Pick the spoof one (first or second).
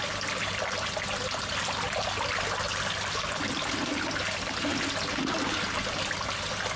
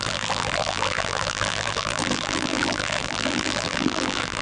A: second